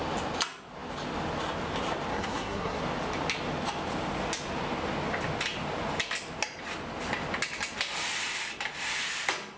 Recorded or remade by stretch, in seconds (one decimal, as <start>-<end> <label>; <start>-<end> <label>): 0.0-2.1 recorded; 2.1-2.8 remade; 2.8-9.6 recorded

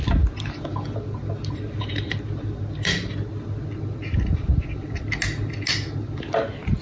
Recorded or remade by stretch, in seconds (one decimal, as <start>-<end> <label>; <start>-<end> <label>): 0.0-6.8 recorded